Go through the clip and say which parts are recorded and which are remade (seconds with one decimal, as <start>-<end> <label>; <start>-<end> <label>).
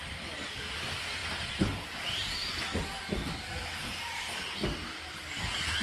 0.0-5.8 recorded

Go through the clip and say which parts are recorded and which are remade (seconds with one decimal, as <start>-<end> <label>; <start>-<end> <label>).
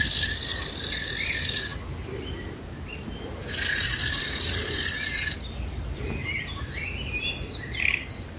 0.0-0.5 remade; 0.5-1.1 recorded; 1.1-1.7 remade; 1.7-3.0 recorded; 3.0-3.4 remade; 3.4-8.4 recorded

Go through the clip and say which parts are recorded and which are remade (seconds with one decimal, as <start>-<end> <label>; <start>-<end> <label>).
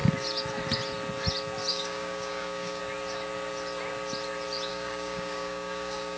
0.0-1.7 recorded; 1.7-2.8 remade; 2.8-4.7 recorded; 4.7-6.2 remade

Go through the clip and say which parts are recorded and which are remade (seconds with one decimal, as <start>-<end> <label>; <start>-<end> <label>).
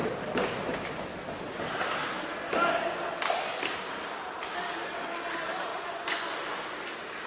0.0-5.7 recorded; 5.7-6.4 remade; 6.4-7.3 recorded